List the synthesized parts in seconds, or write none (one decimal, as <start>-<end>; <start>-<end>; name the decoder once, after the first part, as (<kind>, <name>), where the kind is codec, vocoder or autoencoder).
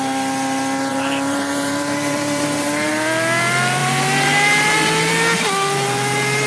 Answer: 0.9-2.9 (vocoder, BigVGAN v2); 3.8-5.1